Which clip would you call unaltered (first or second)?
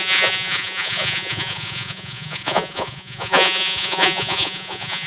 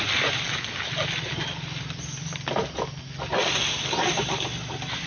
second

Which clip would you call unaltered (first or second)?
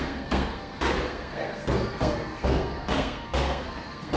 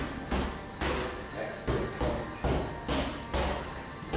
second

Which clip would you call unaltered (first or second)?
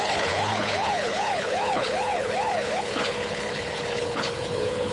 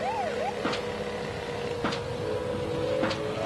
second